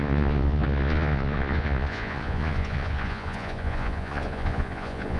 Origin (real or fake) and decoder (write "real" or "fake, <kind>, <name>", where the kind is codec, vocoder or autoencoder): fake, vocoder, Vocos